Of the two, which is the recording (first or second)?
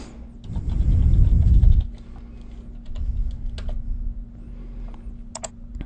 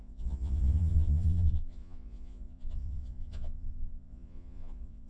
first